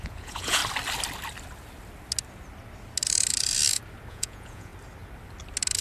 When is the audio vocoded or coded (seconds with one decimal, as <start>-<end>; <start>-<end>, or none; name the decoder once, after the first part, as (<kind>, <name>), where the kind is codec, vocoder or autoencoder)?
0.0-0.6 (vocoder, Vocos); 4.1-4.7